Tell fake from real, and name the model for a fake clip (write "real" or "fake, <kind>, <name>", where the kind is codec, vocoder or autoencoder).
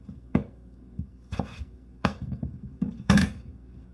fake, codec, SNAC